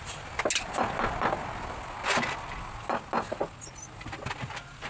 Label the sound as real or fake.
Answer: real